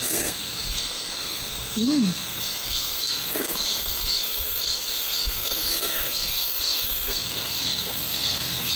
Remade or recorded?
remade